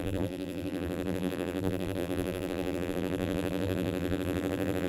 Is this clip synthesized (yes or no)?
yes